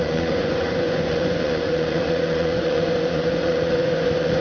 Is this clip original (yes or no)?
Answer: no